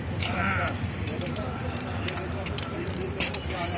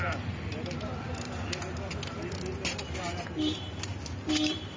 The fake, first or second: first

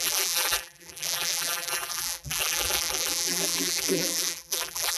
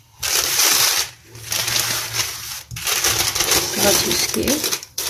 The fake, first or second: first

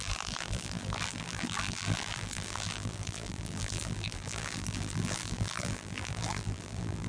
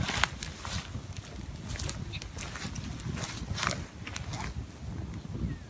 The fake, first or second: first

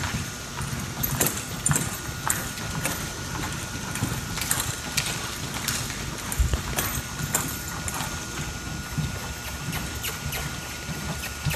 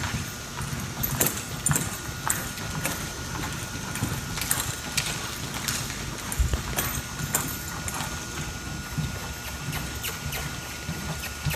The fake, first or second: first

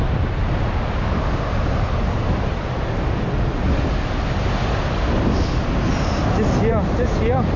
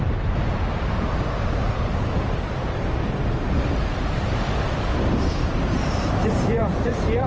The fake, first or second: second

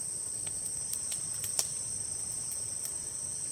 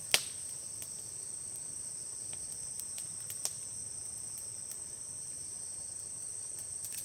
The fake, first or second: first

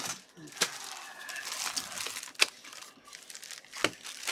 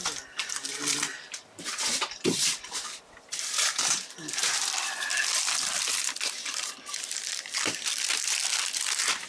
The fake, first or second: second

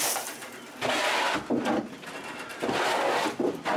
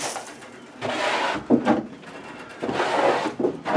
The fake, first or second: first